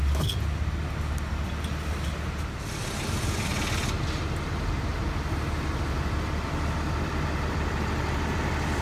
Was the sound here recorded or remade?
recorded